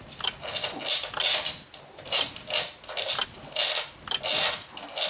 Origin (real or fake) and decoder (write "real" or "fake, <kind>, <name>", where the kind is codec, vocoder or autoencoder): real